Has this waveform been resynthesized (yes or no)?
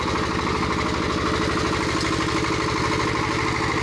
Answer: no